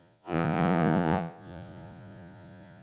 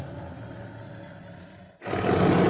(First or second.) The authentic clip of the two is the second